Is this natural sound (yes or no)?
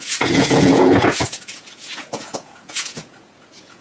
no